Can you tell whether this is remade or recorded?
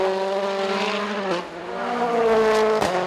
recorded